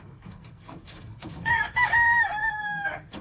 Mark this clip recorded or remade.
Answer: remade